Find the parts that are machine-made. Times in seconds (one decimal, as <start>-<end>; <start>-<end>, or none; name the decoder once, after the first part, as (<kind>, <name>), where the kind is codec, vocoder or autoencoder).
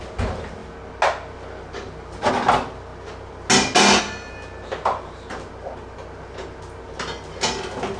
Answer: none